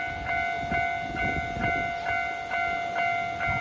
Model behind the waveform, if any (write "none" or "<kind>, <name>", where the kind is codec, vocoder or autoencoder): none